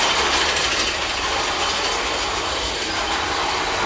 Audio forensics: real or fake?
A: real